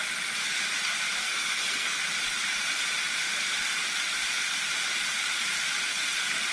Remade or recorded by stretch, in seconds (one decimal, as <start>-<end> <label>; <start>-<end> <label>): 0.0-1.2 recorded; 1.2-2.0 remade; 2.0-6.5 recorded

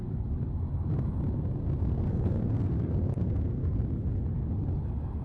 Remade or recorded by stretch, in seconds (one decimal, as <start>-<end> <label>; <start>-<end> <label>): 0.0-1.8 recorded; 1.8-3.8 remade; 3.8-5.2 recorded

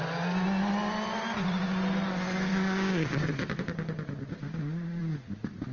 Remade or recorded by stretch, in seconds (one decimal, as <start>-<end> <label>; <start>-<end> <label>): 0.0-2.5 recorded; 2.5-3.3 remade; 3.3-4.5 recorded; 4.5-5.0 remade; 5.0-5.7 recorded

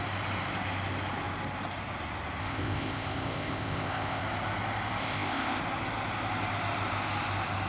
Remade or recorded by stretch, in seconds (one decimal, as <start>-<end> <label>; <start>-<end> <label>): 0.0-2.4 recorded; 2.4-4.2 remade; 4.2-5.0 recorded; 5.0-5.6 remade; 5.6-7.7 recorded

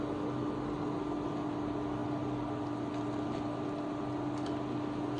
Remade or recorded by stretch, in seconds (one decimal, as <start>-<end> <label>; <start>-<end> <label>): 0.0-5.2 recorded

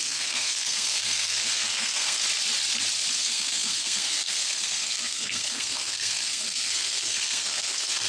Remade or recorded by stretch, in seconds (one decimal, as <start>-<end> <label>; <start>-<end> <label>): 0.0-2.2 remade; 2.2-3.1 recorded; 3.1-8.1 remade